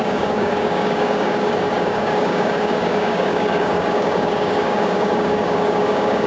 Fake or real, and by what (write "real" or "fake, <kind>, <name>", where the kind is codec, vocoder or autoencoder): fake, codec, DAC